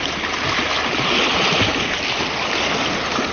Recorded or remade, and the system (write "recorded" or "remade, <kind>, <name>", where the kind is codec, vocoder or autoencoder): recorded